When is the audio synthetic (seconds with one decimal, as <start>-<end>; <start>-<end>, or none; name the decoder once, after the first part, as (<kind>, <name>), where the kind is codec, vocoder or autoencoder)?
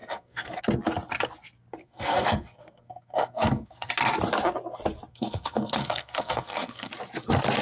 0.0-0.6 (codec, SNAC); 1.8-3.9; 5.1-6.9